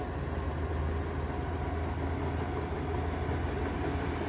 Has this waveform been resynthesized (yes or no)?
no